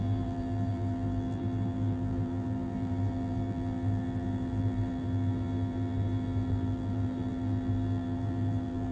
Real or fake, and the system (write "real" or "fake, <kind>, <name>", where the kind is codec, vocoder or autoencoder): fake, vocoder, BigVGAN v2